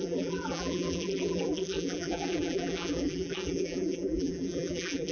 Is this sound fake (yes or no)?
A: yes